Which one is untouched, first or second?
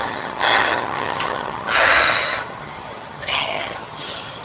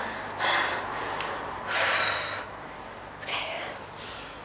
second